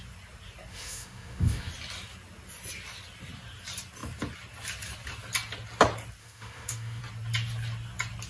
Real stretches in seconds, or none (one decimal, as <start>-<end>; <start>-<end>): 0.0-0.7; 1.7-6.2; 7.0-8.3